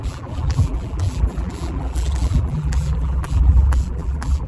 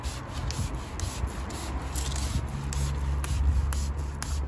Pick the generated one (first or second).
first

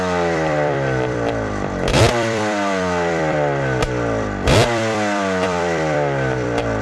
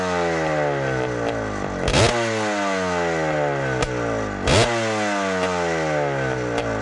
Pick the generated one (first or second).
first